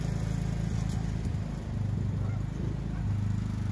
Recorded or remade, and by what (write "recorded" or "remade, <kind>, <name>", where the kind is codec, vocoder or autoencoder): recorded